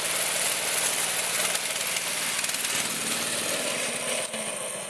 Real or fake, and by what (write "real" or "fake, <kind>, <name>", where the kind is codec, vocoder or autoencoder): real